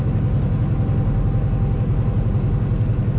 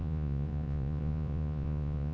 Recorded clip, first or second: first